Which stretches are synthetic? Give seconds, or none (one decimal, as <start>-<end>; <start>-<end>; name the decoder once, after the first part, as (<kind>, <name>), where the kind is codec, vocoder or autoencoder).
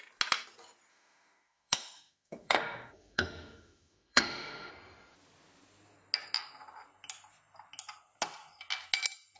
0.9-4.7 (autoencoder, DAC-VAE)